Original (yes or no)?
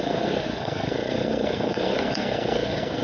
no